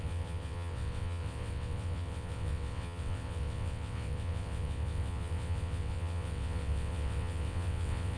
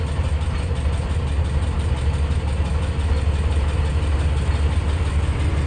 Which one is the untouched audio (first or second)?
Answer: second